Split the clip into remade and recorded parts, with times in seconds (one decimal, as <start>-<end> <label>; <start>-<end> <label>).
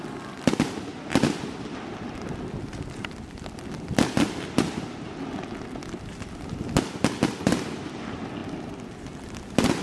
0.0-9.8 recorded